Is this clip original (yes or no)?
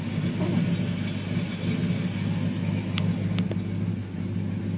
yes